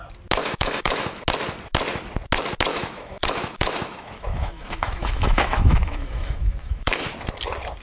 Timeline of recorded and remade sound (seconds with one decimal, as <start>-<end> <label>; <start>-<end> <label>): 0.0-0.4 recorded; 0.4-1.2 remade; 1.2-2.7 recorded; 2.7-7.0 remade; 7.0-7.8 recorded